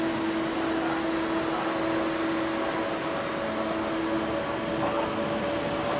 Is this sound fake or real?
real